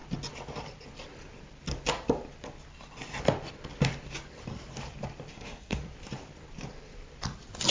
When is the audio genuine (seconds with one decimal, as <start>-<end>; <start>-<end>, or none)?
0.0-5.3; 5.8-7.7